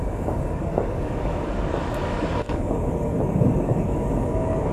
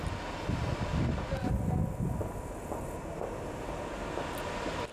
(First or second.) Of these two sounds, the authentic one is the second